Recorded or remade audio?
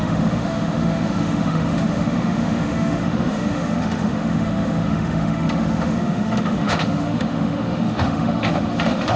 remade